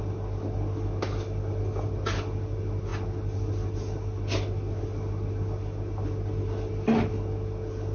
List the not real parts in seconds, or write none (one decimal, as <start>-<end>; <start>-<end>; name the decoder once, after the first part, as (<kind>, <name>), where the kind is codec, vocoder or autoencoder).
none